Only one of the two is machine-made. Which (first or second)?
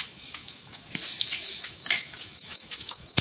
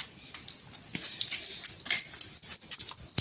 first